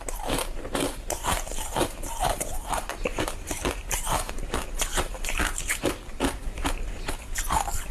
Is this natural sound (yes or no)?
no